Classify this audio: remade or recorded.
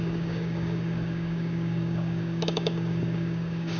remade